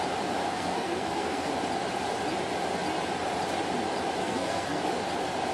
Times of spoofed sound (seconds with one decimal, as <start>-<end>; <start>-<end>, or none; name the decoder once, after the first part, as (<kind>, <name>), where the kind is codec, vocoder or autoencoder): 0.4-1.5 (codec, SNAC); 4.2-4.8